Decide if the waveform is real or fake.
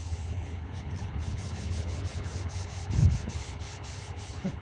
fake